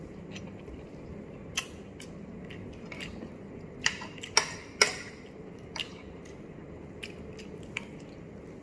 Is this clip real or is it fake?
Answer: real